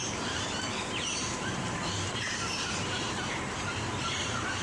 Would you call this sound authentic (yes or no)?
no